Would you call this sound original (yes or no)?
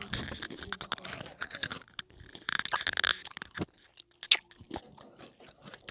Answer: yes